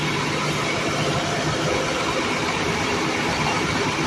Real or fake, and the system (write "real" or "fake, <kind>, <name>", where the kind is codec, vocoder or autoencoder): real